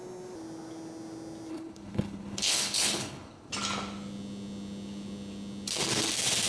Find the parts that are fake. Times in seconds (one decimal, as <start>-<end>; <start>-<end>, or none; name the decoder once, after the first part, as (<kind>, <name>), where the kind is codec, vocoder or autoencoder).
1.5-3.5 (codec, HILCodec)